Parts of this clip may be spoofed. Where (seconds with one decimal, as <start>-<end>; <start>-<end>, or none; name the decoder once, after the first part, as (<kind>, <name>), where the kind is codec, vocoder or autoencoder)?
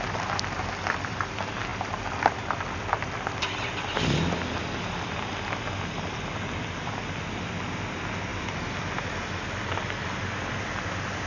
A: none